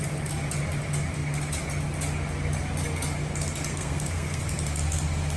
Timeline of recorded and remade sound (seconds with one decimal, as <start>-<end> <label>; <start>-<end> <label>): 0.0-3.7 recorded; 3.7-4.4 remade; 4.4-5.4 recorded